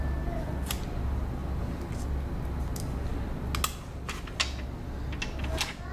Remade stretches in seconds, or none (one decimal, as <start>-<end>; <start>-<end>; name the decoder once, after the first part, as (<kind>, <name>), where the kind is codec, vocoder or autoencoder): none

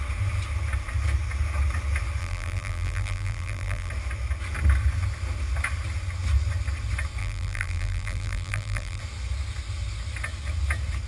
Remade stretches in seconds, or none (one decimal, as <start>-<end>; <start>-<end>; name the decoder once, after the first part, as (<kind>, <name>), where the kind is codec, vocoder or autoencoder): 2.2-3.9 (vocoder, BigVGAN v2); 7.2-9.0